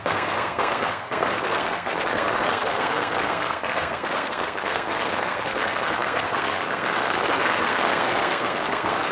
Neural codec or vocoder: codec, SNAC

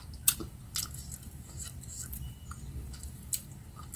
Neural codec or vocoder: none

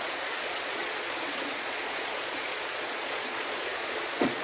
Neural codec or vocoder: vocoder, Vocos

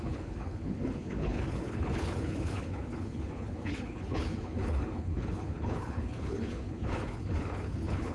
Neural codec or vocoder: codec, HILCodec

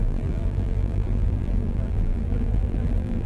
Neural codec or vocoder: vocoder, BigVGAN v2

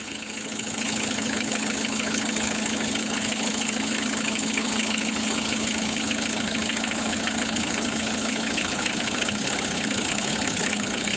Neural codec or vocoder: codec, HILCodec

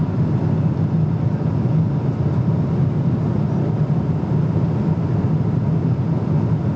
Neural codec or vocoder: none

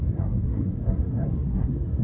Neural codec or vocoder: codec, SNAC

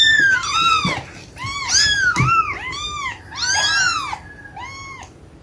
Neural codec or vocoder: none